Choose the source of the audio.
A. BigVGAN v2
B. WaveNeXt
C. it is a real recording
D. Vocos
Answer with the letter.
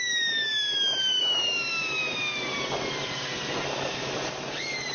A